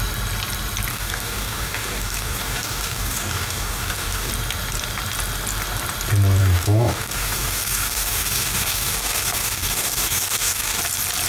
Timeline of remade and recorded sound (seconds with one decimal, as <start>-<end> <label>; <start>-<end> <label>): 0.0-0.9 recorded; 0.9-4.3 remade; 4.3-6.4 recorded; 6.4-10.8 remade; 10.8-11.3 recorded